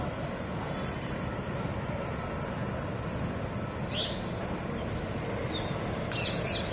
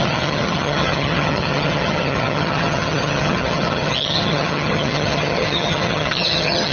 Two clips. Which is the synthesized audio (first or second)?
second